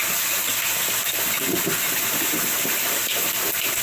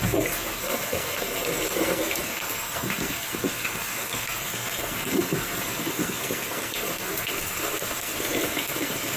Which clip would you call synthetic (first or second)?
second